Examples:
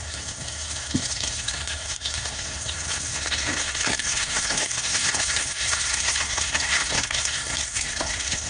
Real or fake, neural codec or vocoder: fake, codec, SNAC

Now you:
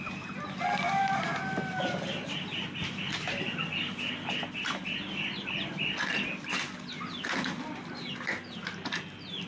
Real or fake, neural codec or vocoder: real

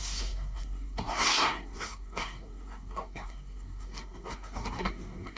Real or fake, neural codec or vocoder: fake, codec, SNAC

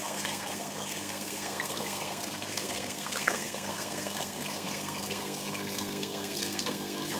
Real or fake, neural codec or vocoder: fake, codec, SNAC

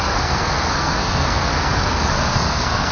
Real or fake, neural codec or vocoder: fake, codec, SNAC